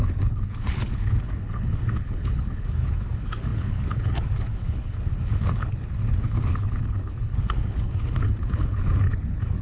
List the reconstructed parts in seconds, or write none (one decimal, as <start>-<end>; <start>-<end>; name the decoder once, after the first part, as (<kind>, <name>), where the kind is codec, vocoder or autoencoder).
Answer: 0.0-9.6 (codec, HILCodec)